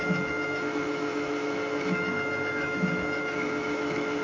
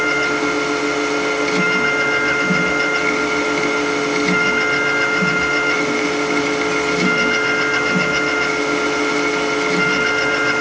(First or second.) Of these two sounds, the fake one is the first